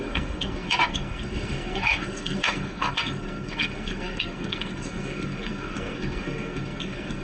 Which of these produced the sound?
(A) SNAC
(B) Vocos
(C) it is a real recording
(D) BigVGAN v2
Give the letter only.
A